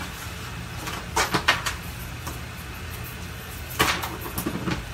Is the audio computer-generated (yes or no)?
no